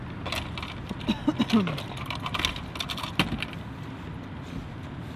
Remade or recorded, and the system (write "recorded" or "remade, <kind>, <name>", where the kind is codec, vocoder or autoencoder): recorded